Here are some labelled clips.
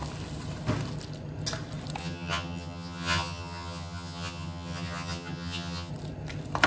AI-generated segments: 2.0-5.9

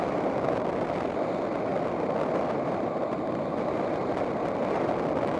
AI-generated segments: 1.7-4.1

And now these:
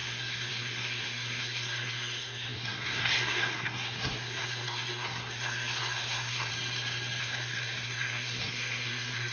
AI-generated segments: 0.0-6.5; 7.2-9.3

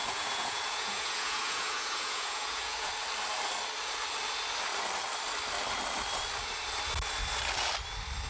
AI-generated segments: 0.0-2.9

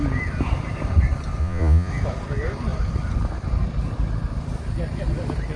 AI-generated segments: 1.4-1.9

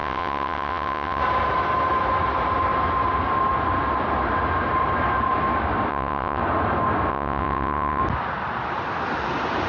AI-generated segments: 0.0-1.2; 5.9-6.4; 7.1-8.0